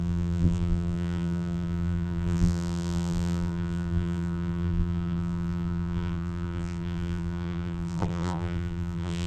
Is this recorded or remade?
remade